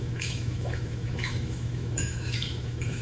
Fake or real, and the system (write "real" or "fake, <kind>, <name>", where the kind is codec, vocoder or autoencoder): fake, autoencoder, DAC-VAE